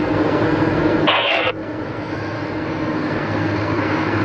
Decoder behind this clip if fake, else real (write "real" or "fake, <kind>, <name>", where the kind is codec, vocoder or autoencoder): fake, codec, SNAC